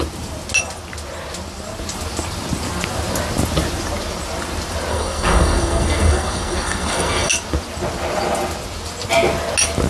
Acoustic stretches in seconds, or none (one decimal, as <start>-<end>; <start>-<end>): 0.0-4.9; 7.3-9.9